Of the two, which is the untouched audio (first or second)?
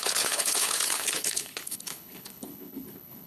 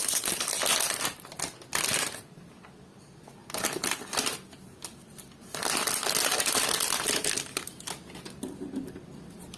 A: second